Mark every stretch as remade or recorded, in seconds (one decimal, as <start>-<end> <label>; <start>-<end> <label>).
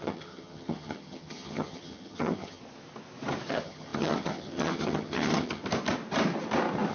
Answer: 0.0-2.6 remade; 2.6-3.5 recorded; 3.5-5.6 remade; 5.6-6.9 recorded